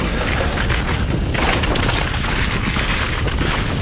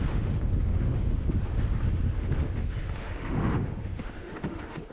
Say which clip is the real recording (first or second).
first